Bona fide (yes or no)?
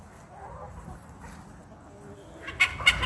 yes